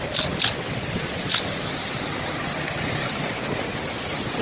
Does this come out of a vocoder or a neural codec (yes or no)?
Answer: no